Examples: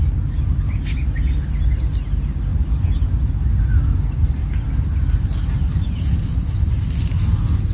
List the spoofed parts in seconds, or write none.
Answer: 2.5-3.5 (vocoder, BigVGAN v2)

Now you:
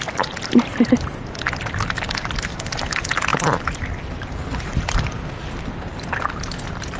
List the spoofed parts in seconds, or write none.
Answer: none

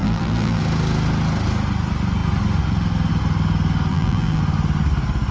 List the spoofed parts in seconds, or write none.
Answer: 0.0-0.6 (vocoder, BigVGAN v2); 3.9-4.4

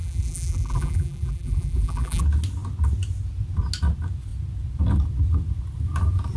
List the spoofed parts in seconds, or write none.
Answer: 0.0-2.2 (vocoder, BigVGAN v2)

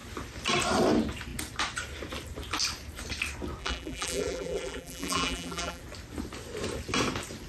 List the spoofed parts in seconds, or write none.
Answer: 3.6-5.8 (vocoder, BigVGAN v2)

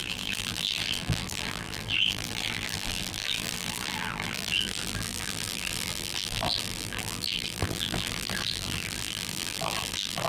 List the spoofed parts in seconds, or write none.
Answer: 0.0-10.3 (vocoder, BigVGAN v2)

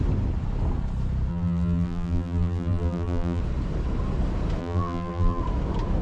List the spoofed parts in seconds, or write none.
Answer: 1.3-3.4 (vocoder, BigVGAN v2); 4.6-5.4